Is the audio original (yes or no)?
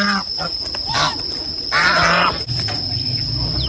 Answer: yes